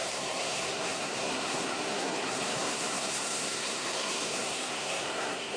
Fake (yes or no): yes